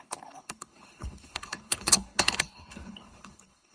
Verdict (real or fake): fake